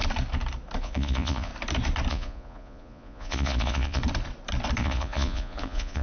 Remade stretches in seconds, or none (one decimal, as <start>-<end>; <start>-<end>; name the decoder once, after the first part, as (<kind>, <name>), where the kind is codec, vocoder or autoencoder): 0.8-1.5 (vocoder, Vocos); 2.1-4.0; 4.8-6.0